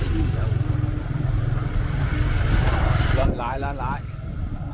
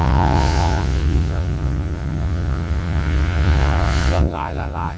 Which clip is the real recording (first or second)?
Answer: first